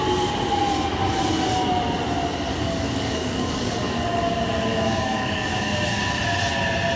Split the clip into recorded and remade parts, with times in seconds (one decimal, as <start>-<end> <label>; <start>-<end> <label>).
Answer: 0.0-2.5 recorded; 2.5-6.0 remade; 6.0-7.0 recorded